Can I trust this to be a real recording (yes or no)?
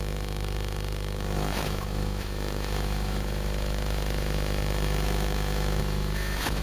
no